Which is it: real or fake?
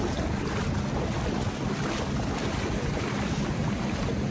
real